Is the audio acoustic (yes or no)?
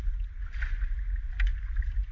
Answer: yes